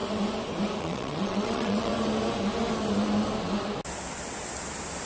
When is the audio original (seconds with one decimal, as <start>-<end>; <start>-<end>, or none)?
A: 0.0-0.8; 1.9-5.1